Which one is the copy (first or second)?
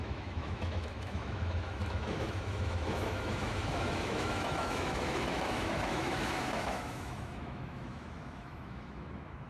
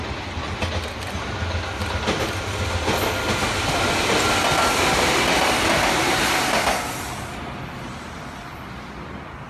first